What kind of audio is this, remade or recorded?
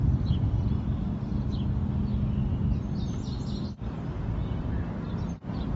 recorded